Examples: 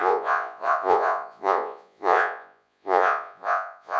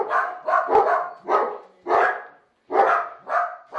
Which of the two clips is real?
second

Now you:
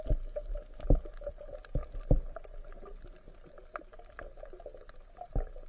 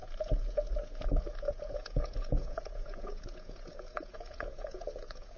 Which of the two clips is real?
first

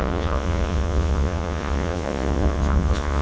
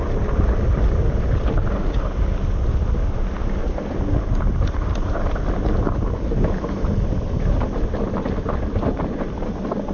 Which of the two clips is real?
second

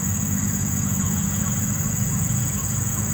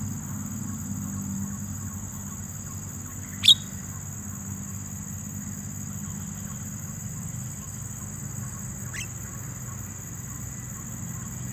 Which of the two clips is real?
second